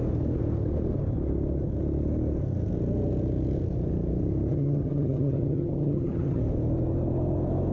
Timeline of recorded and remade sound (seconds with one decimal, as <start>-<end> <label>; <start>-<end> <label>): 0.0-4.5 recorded; 4.5-6.4 remade; 6.4-7.7 recorded